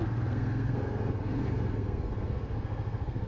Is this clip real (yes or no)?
no